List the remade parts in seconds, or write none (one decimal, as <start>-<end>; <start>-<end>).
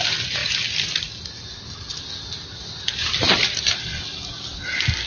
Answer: none